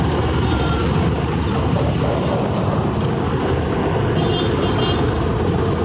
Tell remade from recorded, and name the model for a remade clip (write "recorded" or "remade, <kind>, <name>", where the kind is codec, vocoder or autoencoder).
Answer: recorded